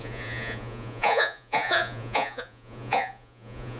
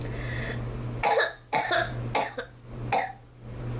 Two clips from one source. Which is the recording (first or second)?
second